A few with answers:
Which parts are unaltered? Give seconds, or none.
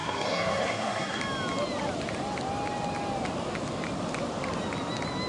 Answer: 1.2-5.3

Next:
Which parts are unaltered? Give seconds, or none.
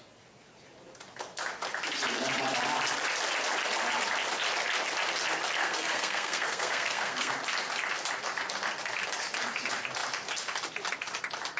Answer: 0.0-5.6; 7.3-11.6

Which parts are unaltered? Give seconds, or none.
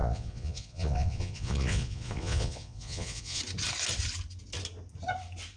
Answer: 3.4-5.6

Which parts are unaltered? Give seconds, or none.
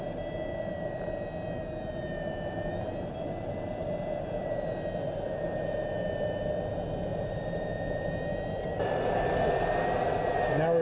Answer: 0.0-7.1; 7.7-10.8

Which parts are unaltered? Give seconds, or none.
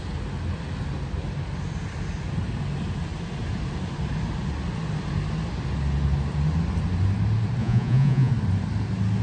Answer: 0.0-7.6; 8.3-9.2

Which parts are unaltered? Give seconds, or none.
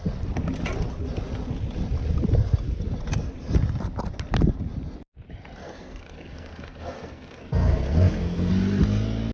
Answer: 0.0-5.6; 8.5-9.3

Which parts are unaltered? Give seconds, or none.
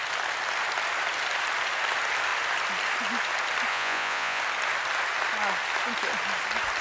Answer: 0.0-3.7; 4.4-6.8